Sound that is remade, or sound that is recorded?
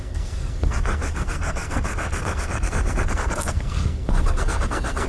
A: remade